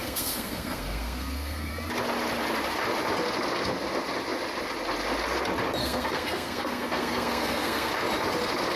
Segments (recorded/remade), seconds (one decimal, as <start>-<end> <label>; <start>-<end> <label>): 0.0-1.7 remade; 1.7-5.8 recorded; 5.8-7.9 remade; 7.9-8.8 recorded